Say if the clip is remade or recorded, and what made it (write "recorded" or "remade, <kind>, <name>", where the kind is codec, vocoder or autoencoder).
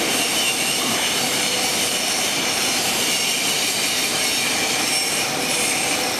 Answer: remade, vocoder, BigVGAN v2